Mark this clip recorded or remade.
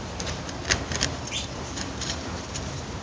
remade